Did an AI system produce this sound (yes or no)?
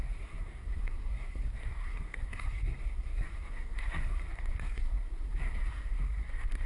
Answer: yes